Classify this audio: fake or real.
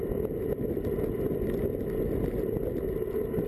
real